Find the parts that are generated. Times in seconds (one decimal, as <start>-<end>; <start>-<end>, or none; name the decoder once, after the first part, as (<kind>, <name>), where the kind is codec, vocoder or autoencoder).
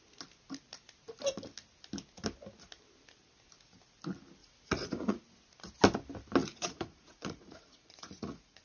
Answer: 4.4-5.2 (vocoder, Vocos); 6.4-8.6